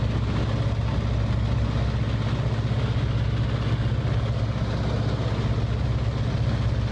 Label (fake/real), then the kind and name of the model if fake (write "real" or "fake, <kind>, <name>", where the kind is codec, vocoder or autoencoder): real